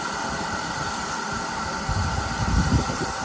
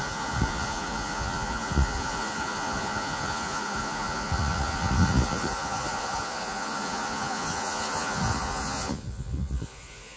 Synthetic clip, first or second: second